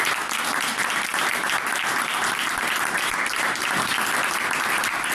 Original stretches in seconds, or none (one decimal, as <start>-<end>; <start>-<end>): 0.0-2.2; 4.0-5.1